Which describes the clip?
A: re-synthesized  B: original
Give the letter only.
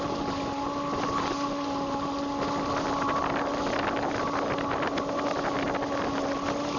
B